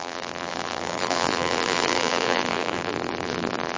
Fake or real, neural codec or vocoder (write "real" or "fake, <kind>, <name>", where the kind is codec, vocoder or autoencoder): fake, vocoder, BigVGAN v2